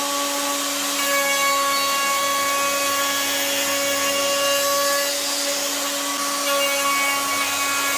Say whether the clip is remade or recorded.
recorded